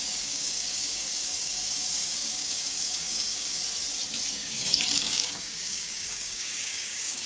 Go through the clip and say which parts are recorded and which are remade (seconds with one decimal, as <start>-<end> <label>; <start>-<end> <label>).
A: 0.0-3.6 remade; 3.6-4.3 recorded; 4.3-7.3 remade